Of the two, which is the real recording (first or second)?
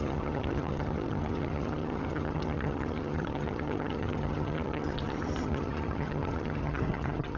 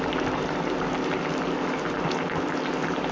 second